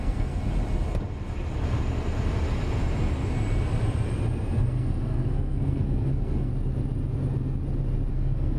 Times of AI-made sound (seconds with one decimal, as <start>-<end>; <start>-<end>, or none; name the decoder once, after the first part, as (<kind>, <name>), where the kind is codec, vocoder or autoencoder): 0.0-0.4 (codec, SNAC); 4.6-6.5; 8.1-8.6